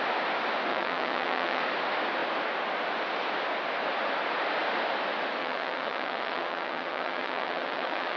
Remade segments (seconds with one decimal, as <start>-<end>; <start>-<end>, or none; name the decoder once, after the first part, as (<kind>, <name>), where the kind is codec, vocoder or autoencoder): 0.7-1.6 (vocoder, WaveNeXt); 5.4-8.2